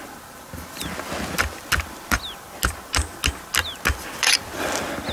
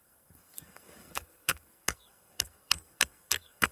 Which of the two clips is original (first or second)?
first